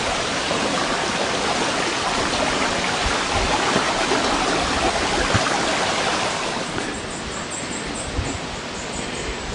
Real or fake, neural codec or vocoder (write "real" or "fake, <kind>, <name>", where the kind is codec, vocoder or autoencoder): real